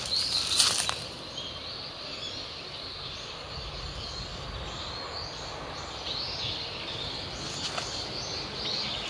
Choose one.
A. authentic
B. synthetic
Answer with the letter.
A